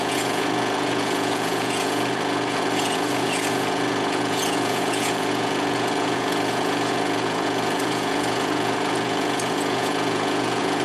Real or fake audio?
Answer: fake